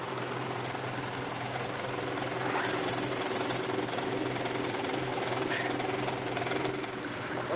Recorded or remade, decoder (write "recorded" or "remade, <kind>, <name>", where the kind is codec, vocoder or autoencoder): recorded